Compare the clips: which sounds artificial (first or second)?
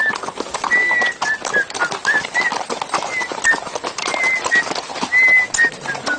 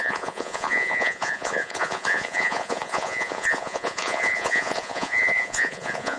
second